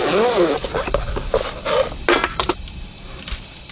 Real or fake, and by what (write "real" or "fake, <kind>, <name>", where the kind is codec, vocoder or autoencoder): real